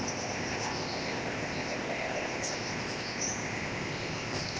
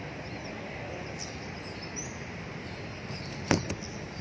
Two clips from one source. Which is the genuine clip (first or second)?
second